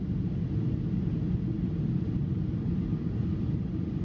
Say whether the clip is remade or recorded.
recorded